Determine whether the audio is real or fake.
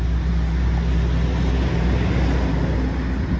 real